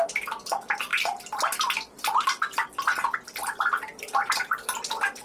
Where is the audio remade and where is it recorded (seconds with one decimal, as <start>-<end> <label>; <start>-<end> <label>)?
0.0-5.2 recorded